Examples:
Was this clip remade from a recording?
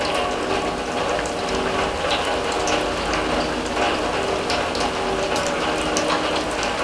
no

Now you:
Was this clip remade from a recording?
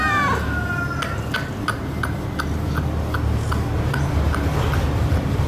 no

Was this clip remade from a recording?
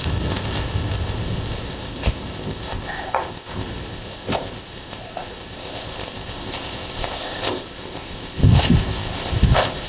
yes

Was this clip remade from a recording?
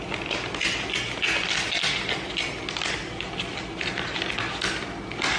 no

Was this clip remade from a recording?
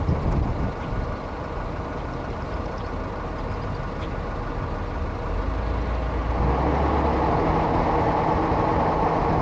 no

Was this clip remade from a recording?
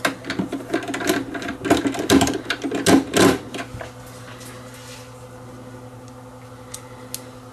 no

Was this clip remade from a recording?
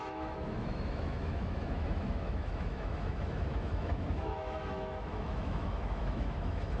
yes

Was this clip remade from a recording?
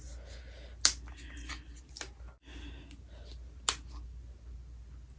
no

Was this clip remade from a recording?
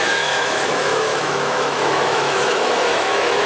yes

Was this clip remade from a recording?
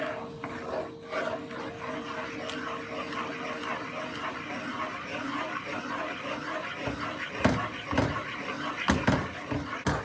no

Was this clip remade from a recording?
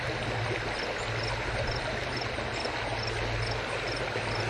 no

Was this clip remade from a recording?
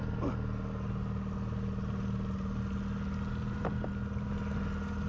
no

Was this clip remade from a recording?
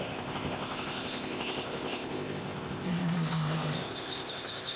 yes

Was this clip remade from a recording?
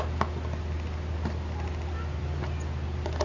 no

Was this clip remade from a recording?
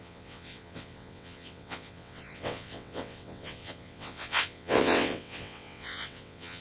yes